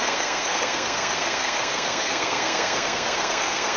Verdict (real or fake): fake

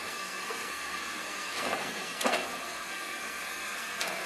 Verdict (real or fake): fake